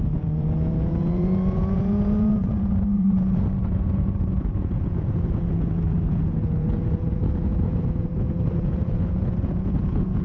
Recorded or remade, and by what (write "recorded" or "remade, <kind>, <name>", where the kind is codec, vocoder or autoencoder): remade, vocoder, Vocos